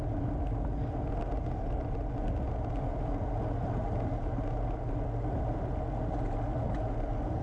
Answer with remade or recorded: recorded